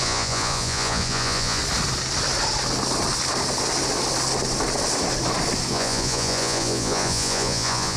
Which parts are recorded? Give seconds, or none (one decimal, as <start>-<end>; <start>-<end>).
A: 1.6-5.7